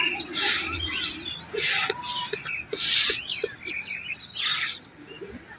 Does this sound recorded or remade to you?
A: recorded